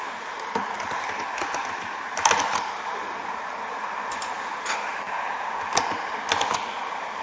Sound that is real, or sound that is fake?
real